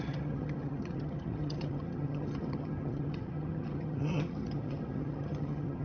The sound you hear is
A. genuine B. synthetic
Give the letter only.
B